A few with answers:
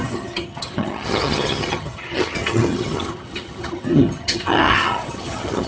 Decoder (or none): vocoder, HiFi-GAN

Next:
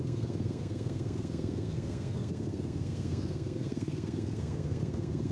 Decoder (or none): codec, SNAC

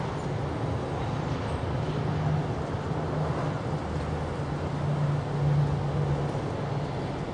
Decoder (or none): none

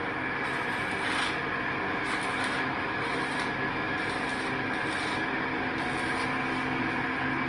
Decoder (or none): none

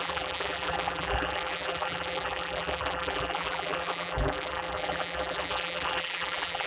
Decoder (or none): vocoder, BigVGAN v2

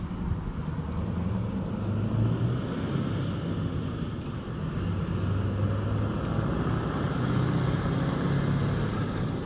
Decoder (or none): none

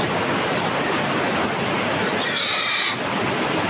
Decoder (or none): none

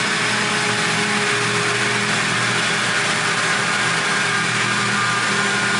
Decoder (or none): none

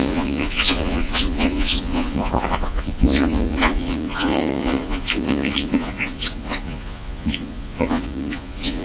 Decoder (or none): vocoder, Vocos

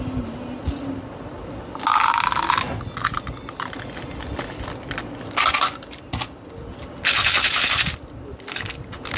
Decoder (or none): none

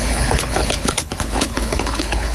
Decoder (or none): codec, HILCodec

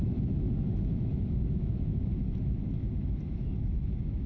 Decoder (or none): autoencoder, DAC-VAE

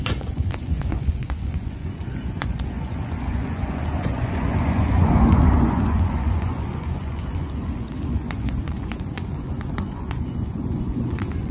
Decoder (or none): vocoder, Vocos